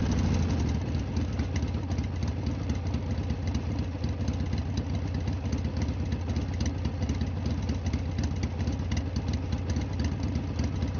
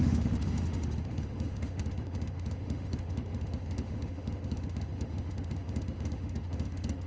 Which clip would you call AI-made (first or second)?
second